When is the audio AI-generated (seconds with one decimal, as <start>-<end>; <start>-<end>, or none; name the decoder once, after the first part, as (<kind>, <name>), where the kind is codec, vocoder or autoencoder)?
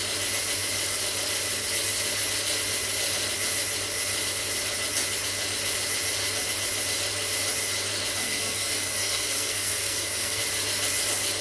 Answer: 8.2-10.4 (codec, SNAC)